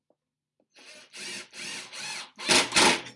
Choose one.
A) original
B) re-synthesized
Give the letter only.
A